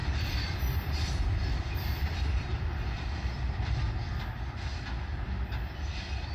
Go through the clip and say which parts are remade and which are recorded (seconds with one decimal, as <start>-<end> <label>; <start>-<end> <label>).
0.0-1.6 remade; 1.6-2.0 recorded; 2.0-3.5 remade; 3.5-6.3 recorded